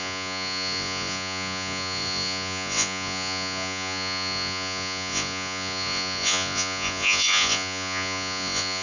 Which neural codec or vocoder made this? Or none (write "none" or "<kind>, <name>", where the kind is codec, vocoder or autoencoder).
vocoder, Vocos